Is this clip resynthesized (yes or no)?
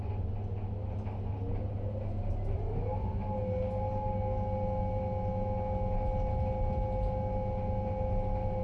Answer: no